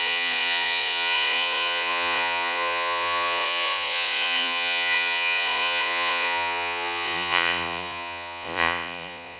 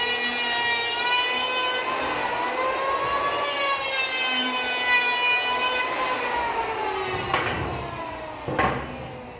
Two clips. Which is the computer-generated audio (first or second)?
first